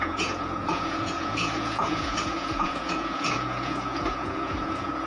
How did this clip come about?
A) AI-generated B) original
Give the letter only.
A